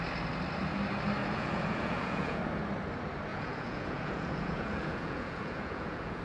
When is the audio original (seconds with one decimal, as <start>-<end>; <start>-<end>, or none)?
0.0-1.2; 2.4-3.3